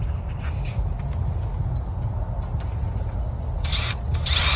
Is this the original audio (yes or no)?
yes